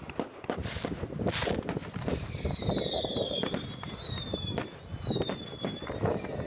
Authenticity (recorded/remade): recorded